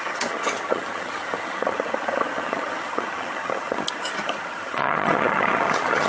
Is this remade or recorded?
remade